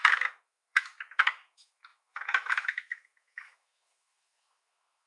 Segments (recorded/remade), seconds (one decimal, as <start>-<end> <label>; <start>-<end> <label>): 0.0-5.1 remade